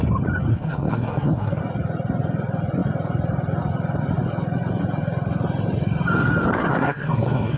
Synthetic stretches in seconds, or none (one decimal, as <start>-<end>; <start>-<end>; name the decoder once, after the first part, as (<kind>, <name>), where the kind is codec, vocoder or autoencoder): 0.5-1.6 (codec, SNAC); 6.6-7.6

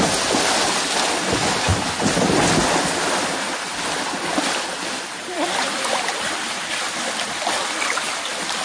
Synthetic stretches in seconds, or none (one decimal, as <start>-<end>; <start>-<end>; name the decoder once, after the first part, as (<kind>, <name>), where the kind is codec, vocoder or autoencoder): none

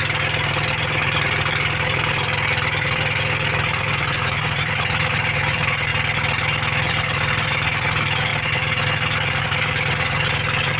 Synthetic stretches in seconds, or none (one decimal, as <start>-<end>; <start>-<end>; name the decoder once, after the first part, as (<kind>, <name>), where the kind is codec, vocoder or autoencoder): 0.0-5.9 (vocoder, BigVGAN v2); 6.9-10.8

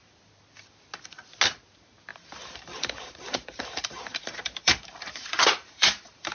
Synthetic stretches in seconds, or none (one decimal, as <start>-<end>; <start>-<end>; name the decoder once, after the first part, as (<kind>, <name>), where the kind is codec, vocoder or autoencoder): 2.1-6.3 (vocoder, BigVGAN v2)